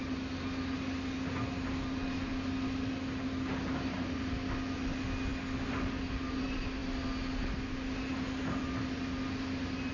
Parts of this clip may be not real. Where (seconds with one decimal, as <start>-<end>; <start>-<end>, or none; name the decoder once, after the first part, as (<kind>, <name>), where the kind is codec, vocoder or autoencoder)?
none